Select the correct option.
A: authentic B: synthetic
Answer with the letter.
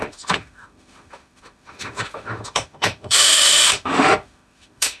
B